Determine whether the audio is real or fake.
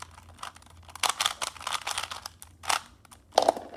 real